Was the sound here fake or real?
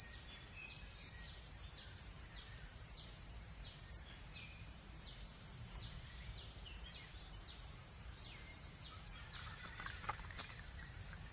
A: fake